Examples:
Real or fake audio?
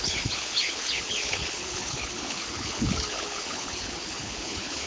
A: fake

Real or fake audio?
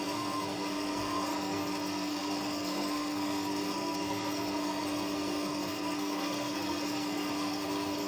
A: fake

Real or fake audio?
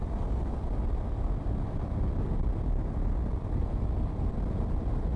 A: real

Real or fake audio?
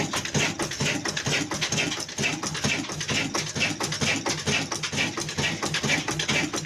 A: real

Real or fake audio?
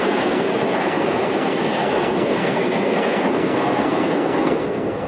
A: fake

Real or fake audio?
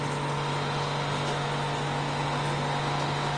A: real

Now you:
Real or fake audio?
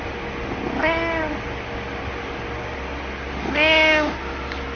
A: real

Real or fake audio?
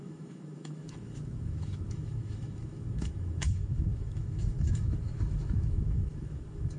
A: fake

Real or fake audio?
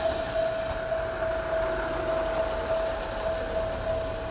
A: real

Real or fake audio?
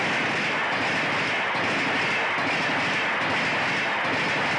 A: real